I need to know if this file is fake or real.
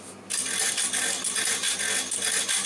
real